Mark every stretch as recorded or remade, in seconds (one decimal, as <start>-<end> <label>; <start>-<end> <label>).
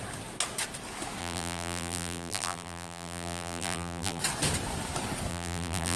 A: 0.0-1.2 recorded; 1.2-4.2 remade; 4.2-5.3 recorded; 5.3-6.0 remade